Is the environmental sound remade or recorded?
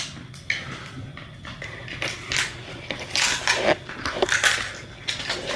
recorded